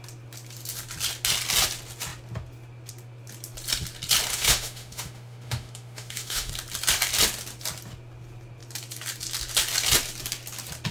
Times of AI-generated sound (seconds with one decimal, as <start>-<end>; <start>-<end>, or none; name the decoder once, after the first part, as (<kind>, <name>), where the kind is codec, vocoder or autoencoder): 4.3-6.5 (autoencoder, DAC-VAE)